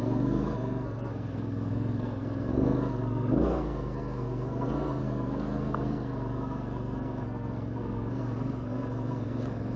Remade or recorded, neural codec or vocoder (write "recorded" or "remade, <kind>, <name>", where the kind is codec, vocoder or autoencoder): remade, codec, SNAC